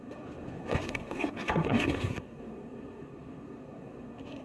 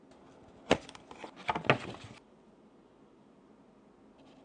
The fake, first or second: first